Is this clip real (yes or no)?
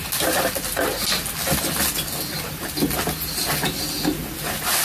yes